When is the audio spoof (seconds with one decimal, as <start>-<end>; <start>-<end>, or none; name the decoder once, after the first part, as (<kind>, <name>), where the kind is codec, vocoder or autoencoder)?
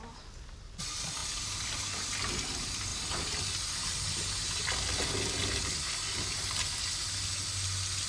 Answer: none